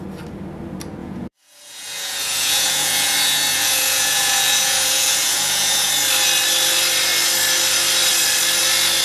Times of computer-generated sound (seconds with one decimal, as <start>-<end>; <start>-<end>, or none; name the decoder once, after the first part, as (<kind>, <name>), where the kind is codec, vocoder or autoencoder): 1.0-5.9 (vocoder, Vocos)